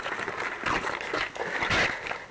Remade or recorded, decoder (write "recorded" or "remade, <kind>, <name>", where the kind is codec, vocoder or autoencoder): recorded